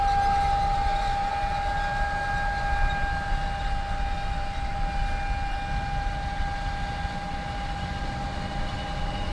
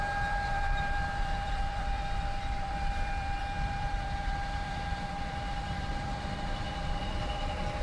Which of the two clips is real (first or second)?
first